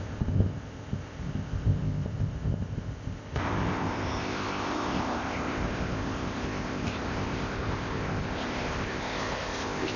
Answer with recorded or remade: remade